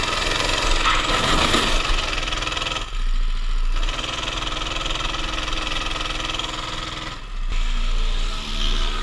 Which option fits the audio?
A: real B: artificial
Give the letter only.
A